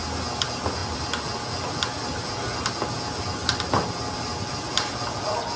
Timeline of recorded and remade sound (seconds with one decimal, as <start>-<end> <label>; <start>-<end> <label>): 0.0-5.6 recorded